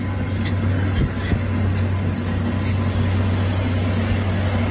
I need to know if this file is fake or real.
real